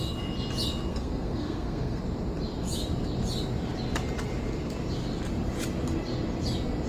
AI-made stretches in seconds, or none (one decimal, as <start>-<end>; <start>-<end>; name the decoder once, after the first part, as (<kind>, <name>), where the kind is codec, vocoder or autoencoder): 0.9-2.0 (codec, SNAC)